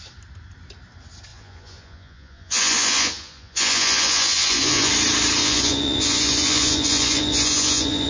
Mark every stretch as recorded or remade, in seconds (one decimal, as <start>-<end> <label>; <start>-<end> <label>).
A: 0.0-1.3 recorded; 1.3-4.9 remade; 4.9-5.4 recorded; 5.4-8.1 remade